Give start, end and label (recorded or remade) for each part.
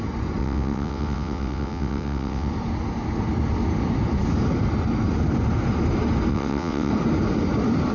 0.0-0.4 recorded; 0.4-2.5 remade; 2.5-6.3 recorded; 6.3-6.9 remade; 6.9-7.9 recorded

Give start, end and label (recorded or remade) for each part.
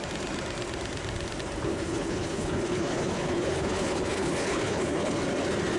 0.0-1.7 recorded; 1.7-5.2 remade; 5.2-5.8 recorded